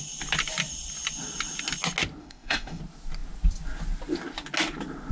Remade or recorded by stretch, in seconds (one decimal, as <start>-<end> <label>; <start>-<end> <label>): 0.0-2.2 recorded; 2.2-2.8 remade; 2.8-5.1 recorded